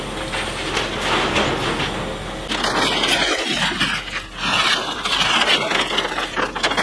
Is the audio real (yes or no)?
yes